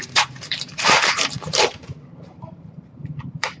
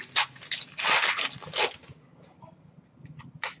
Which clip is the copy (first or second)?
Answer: first